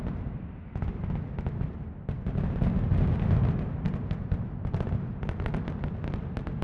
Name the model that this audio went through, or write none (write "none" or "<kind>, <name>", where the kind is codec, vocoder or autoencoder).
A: none